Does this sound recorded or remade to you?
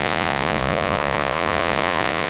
remade